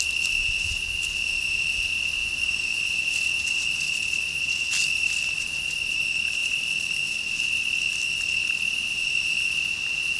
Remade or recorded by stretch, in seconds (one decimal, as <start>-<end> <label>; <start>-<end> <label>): 0.0-2.2 recorded; 2.2-3.0 remade; 3.0-10.2 recorded